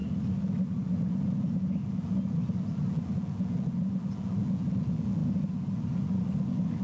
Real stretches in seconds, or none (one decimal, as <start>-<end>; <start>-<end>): 0.0-6.8